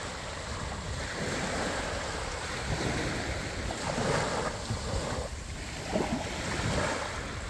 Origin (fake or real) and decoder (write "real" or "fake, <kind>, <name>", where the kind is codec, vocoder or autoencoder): real